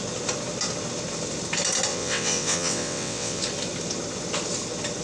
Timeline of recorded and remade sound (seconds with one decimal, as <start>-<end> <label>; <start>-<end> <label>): 0.0-1.9 recorded; 1.9-3.4 remade; 3.4-5.0 recorded